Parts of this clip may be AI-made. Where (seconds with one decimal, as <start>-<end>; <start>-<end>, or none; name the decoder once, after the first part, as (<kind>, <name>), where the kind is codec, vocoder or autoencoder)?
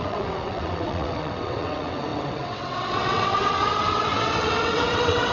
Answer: 0.0-5.3 (vocoder, WaveNeXt)